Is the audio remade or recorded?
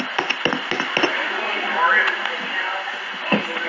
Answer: recorded